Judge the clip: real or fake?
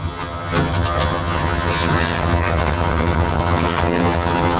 fake